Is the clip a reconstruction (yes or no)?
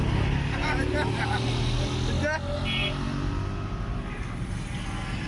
no